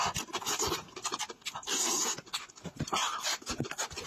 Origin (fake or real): real